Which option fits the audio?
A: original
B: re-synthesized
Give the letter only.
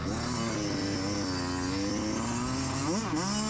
A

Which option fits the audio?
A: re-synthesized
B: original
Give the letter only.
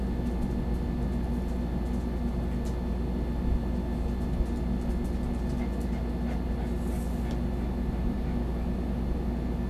B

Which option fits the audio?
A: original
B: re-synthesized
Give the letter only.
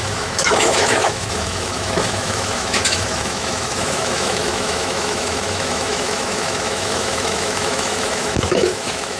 B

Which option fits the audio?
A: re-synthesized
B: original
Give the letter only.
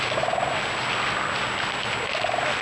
B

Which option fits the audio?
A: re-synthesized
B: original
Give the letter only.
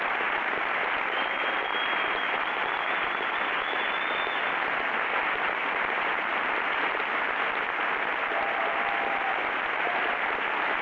B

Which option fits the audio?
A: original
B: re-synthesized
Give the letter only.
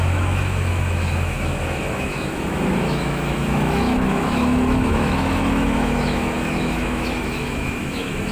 B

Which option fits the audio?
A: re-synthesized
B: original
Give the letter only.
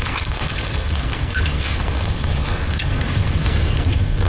A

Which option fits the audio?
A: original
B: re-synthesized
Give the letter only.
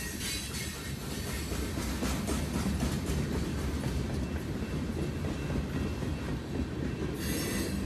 A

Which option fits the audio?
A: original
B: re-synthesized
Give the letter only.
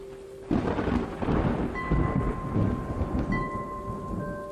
A